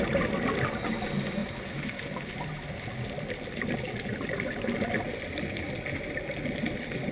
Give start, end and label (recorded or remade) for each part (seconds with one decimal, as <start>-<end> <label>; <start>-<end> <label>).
0.0-1.4 recorded; 1.4-2.9 remade; 2.9-7.1 recorded